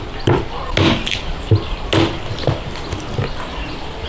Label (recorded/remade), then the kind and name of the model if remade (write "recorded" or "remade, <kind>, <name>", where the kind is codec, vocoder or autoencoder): recorded